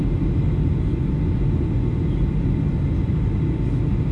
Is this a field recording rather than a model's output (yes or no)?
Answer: yes